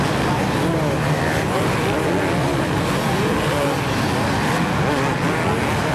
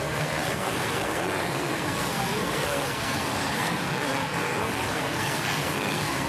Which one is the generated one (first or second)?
second